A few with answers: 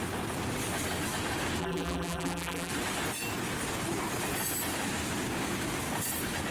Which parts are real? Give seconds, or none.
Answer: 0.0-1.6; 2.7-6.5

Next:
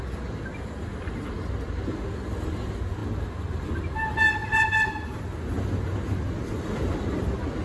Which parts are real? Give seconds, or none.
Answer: 0.0-3.0; 3.9-4.4; 5.2-6.4

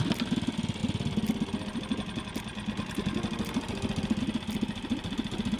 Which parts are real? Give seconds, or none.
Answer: 0.0-5.6

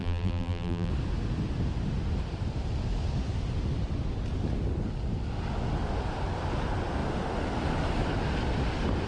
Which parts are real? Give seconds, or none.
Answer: 0.9-9.1